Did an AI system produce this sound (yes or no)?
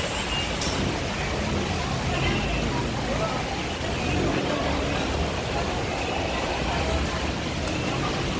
no